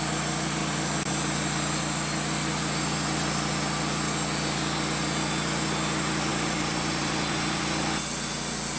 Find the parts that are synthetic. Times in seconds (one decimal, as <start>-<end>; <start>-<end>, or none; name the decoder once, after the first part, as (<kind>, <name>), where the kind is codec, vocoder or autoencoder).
6.3-7.6 (vocoder, BigVGAN v2)